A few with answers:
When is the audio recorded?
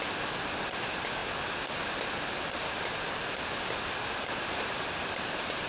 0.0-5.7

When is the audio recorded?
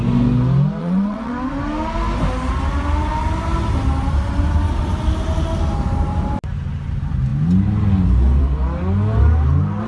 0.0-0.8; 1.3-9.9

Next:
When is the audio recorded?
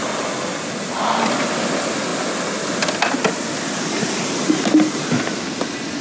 0.0-6.0